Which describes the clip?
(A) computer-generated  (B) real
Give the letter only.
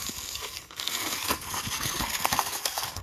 A